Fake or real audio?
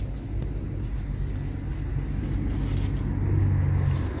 real